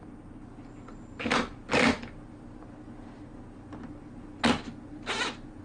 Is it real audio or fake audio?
real